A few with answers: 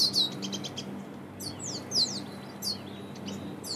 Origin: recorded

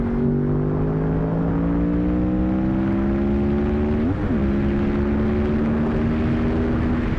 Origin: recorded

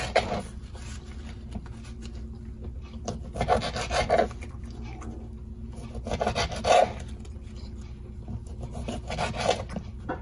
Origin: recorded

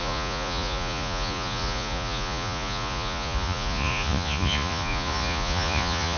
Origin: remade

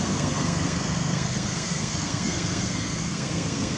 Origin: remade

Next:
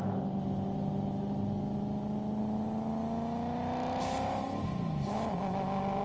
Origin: recorded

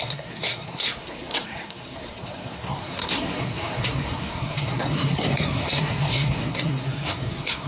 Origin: remade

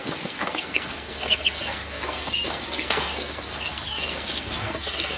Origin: remade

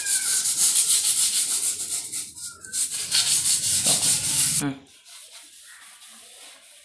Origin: remade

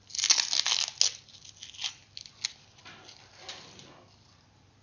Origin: recorded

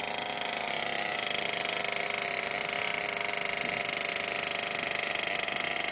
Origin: recorded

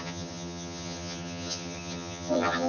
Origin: remade